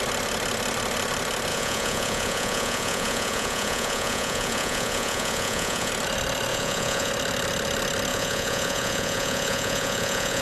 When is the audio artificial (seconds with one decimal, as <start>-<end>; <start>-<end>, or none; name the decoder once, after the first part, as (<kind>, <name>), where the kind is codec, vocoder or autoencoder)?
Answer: 1.5-5.9 (vocoder, Vocos); 6.5-7.1; 8.1-10.4